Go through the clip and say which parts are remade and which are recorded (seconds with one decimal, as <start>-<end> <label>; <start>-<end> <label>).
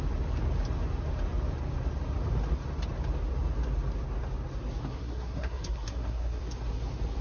0.0-4.8 recorded; 4.8-6.4 remade; 6.4-7.2 recorded